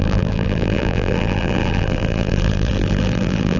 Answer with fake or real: fake